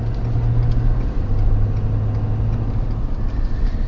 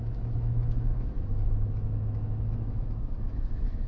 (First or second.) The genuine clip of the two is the first